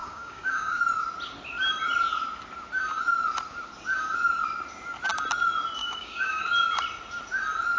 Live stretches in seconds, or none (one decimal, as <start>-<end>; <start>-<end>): 0.8-5.8; 6.4-7.8